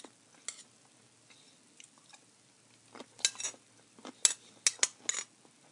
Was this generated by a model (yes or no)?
no